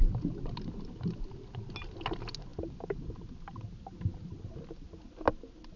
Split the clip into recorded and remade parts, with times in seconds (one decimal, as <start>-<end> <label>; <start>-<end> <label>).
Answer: 0.0-5.8 recorded